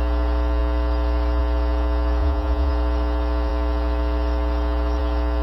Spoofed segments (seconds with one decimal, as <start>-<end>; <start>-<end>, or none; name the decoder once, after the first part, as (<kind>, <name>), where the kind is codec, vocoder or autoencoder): 2.2-2.7 (vocoder, Vocos)